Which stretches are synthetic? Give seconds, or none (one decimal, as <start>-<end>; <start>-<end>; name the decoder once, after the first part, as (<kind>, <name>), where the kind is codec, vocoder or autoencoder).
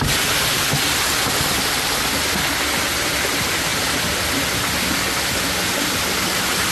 none